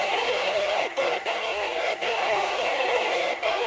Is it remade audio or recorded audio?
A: remade